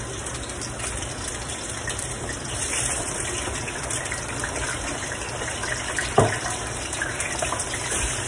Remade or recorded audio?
remade